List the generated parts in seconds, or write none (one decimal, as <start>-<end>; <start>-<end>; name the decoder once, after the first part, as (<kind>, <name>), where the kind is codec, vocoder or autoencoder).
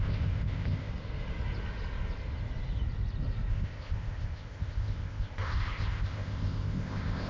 0.0-0.9 (codec, ZipCodec); 3.5-7.3